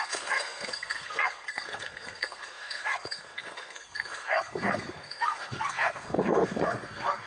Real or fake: fake